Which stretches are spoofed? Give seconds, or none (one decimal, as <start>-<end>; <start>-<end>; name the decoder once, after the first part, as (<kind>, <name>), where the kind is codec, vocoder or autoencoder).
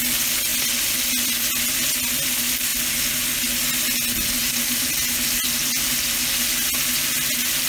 none